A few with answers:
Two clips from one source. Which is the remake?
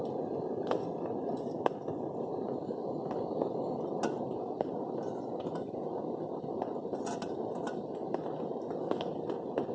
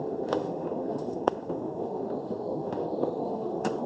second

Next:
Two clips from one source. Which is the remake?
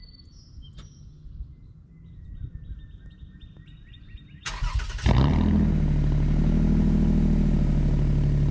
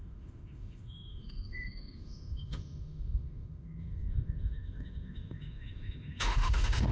second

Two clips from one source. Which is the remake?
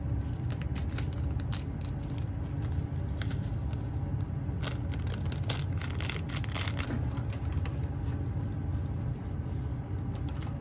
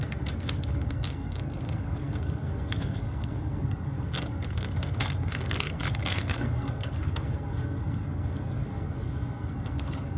second